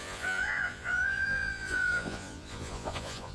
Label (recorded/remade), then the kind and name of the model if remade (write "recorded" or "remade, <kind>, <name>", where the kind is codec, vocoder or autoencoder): remade, vocoder, Vocos